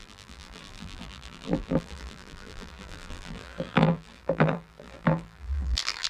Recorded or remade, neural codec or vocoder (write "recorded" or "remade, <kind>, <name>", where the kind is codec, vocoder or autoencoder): remade, vocoder, BigVGAN v2